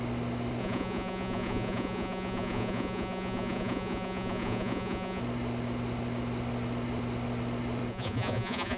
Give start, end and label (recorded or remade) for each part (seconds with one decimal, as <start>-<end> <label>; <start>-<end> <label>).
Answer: 0.0-0.6 recorded; 0.6-5.2 remade; 5.2-7.9 recorded; 7.9-8.8 remade